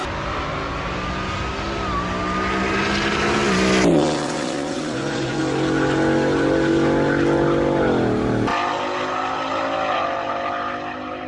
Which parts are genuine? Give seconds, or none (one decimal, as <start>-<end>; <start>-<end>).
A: 0.0-3.9; 5.4-11.3